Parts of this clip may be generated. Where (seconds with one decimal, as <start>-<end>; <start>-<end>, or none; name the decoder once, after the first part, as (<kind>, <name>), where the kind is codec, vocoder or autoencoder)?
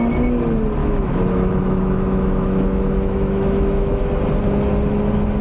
0.8-4.0 (autoencoder, DAC-VAE)